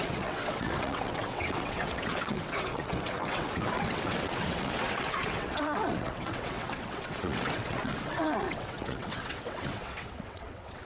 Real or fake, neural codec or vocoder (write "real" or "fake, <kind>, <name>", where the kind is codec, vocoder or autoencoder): fake, vocoder, WaveNeXt